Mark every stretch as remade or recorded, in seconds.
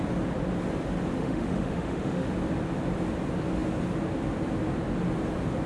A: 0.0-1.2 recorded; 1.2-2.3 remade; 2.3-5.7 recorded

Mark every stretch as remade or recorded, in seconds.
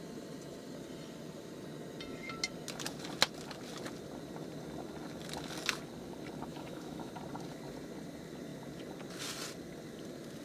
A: 0.0-6.5 recorded; 6.5-7.1 remade; 7.1-10.4 recorded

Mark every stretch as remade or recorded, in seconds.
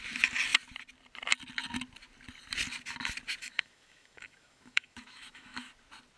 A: 0.0-3.4 recorded; 3.4-5.7 remade; 5.7-6.2 recorded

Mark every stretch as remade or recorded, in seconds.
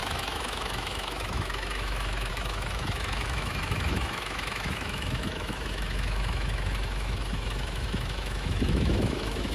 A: 0.0-9.5 remade